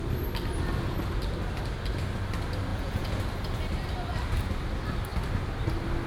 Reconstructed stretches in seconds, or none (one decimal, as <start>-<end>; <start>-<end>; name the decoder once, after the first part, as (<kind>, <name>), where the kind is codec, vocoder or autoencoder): 2.7-3.2 (vocoder, Vocos)